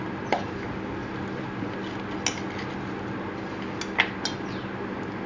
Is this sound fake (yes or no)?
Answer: no